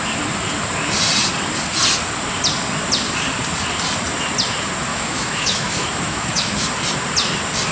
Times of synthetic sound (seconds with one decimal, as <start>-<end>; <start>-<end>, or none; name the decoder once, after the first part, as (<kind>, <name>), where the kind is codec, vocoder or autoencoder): 4.9-6.5 (autoencoder, DAC-VAE)